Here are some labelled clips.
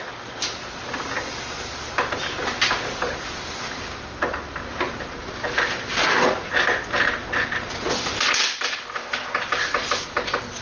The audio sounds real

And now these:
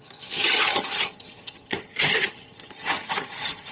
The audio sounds fake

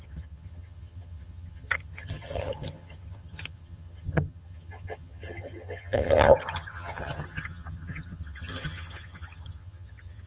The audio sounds fake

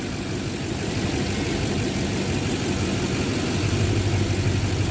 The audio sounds real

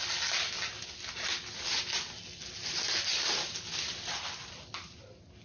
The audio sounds real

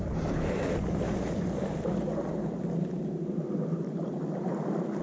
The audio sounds real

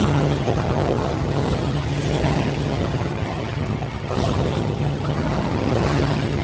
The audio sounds fake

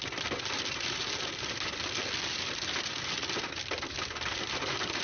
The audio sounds real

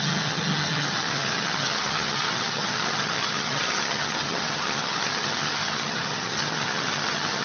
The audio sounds fake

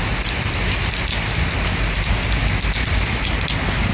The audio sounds real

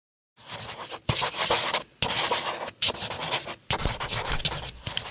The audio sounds real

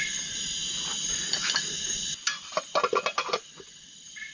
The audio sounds real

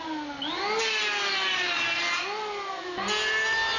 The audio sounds real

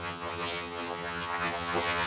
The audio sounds fake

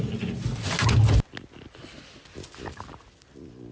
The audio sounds real